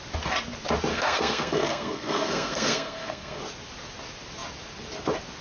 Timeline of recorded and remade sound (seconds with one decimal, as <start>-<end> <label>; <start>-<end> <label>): 0.0-0.9 recorded; 0.9-3.4 remade; 3.4-5.4 recorded